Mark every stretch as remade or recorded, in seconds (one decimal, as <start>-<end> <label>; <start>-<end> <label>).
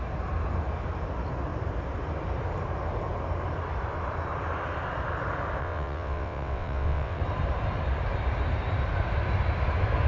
0.0-5.6 recorded; 5.6-7.2 remade; 7.2-10.1 recorded